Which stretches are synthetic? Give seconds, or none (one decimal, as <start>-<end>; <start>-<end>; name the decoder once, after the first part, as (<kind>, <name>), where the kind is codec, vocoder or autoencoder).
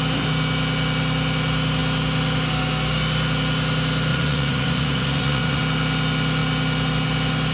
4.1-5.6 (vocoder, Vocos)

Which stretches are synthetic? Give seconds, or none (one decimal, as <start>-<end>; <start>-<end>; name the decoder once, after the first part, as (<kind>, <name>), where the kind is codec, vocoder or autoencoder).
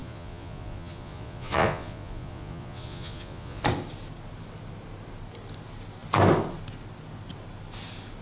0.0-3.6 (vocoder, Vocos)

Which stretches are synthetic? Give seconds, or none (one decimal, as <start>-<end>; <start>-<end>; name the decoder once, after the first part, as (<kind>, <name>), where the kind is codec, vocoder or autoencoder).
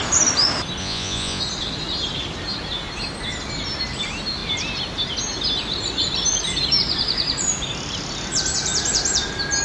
0.8-1.4 (vocoder, Vocos)